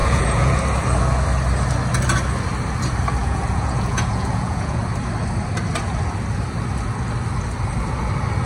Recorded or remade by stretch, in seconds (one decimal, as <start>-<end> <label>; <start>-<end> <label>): 0.0-0.6 remade; 0.6-3.2 recorded; 3.2-4.8 remade; 4.8-8.5 recorded